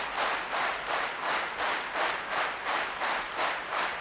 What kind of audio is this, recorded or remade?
recorded